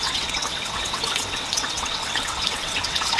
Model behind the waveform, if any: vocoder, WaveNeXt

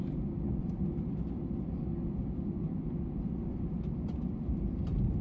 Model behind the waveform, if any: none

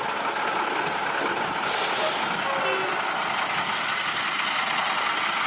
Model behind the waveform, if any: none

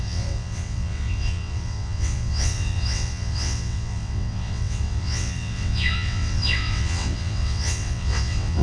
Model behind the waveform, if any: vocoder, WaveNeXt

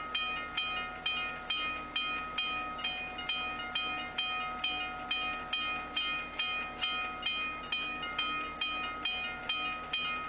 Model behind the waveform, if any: none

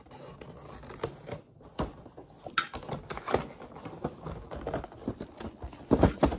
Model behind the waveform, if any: none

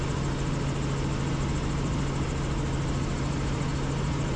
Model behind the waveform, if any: none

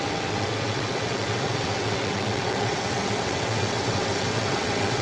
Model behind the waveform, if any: vocoder, WaveNeXt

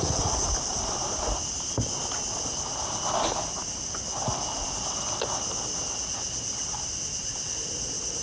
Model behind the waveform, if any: none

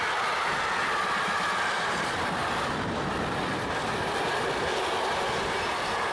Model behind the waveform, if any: none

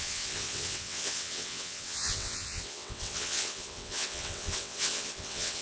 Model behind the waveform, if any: vocoder, WaveNeXt